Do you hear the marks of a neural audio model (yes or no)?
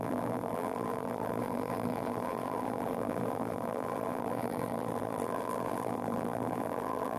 yes